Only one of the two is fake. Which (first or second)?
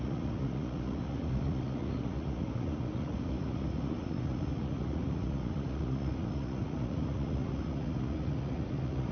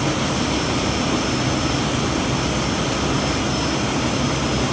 first